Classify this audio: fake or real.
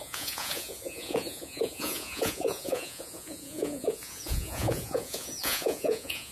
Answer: fake